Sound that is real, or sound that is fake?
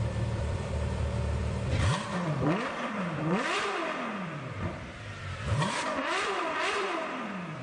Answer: fake